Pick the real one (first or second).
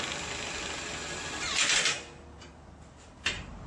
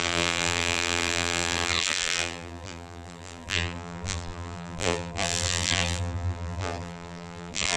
first